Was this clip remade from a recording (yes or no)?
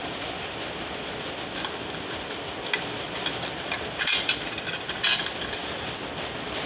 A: no